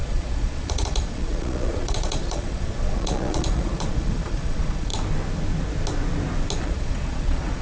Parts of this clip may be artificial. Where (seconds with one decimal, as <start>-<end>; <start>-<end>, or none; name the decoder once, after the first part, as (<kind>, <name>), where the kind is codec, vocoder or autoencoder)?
0.0-4.9 (vocoder, Vocos); 6.6-7.6